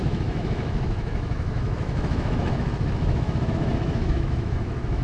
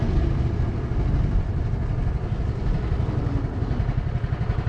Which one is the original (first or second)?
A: second